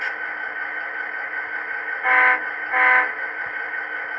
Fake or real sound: real